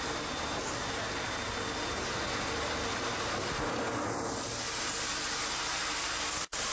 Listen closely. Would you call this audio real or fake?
real